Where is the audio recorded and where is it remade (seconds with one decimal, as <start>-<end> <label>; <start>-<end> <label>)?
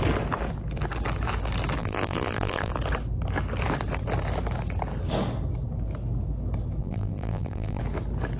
0.0-1.8 recorded; 1.8-2.7 remade; 2.7-6.8 recorded; 6.8-7.8 remade; 7.8-8.4 recorded